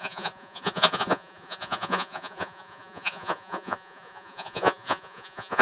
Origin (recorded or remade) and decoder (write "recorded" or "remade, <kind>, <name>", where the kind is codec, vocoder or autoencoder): remade, vocoder, Vocos